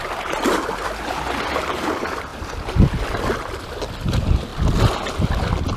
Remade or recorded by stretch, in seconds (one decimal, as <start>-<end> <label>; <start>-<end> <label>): 0.0-5.8 recorded